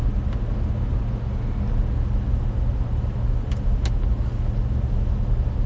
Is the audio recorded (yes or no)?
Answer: yes